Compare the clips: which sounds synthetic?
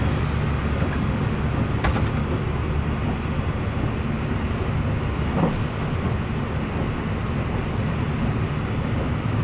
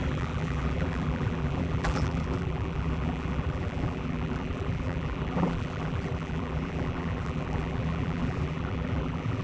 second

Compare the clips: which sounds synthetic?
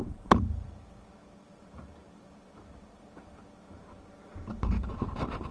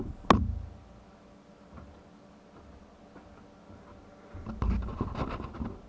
first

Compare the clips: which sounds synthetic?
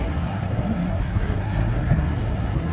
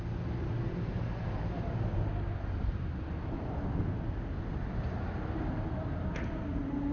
first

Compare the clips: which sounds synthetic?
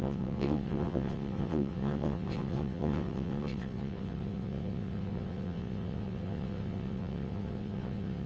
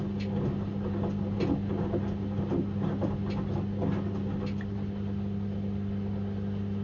first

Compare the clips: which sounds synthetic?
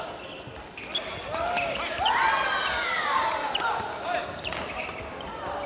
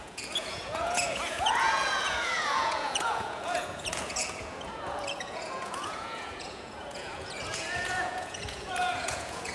second